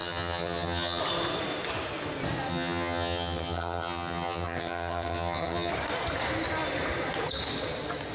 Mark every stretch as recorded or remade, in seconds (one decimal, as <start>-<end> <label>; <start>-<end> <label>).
0.0-1.0 remade; 1.0-2.5 recorded; 2.5-5.7 remade; 5.7-8.1 recorded